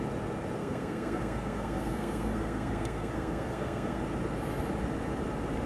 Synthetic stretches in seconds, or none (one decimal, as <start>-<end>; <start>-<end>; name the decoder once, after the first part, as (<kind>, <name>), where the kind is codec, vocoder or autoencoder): 0.6-4.0 (codec, SNAC)